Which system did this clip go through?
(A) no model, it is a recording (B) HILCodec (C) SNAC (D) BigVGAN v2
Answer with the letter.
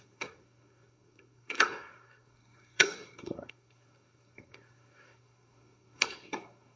C